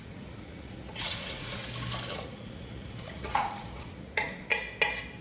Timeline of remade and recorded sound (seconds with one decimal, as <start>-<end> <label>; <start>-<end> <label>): 0.0-1.6 remade; 1.6-2.1 recorded; 2.1-4.5 remade; 4.5-5.2 recorded